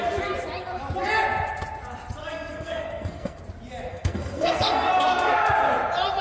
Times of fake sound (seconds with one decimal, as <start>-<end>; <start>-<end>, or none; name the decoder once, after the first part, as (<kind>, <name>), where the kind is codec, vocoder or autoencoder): 2.2-3.4 (codec, SNAC); 3.9-4.9